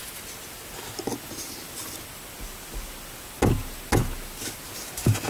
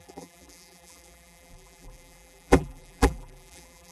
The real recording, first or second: first